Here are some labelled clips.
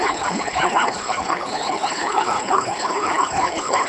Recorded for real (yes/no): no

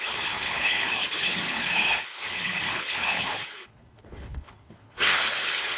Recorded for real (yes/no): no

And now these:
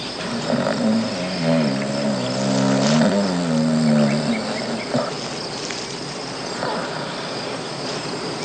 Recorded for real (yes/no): yes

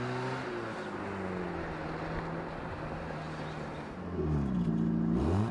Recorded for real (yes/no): yes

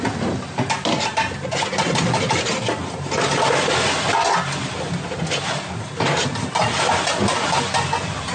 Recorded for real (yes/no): yes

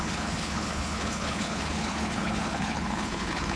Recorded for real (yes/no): no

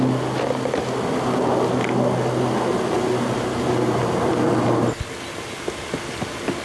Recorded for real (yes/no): yes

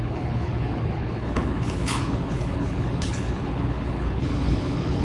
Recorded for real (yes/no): no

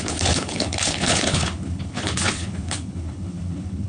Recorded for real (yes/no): no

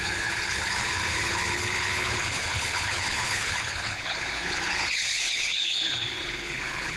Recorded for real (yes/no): no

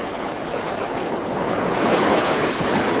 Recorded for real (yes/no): no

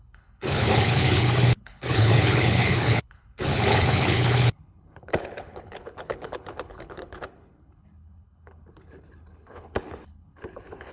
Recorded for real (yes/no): no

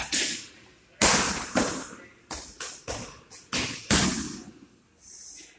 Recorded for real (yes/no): yes